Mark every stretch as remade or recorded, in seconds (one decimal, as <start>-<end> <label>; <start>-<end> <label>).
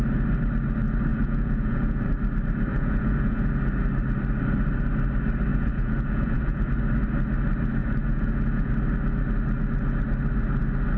0.0-1.1 recorded; 1.1-2.1 remade; 2.1-2.7 recorded; 2.7-3.5 remade; 3.5-5.5 recorded; 5.5-6.7 remade; 6.7-7.8 recorded; 7.8-8.7 remade; 8.7-11.0 recorded